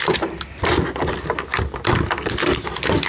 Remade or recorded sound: recorded